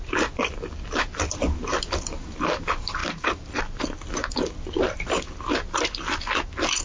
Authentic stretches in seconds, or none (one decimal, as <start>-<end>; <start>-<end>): 0.0-6.8